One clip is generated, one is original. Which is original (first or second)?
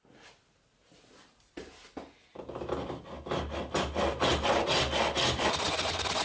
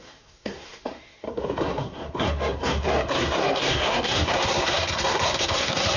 first